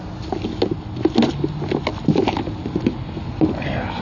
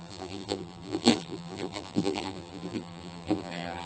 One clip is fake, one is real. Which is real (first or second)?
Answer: first